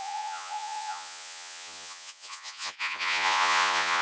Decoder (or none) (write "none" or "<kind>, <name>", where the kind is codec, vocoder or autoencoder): vocoder, Vocos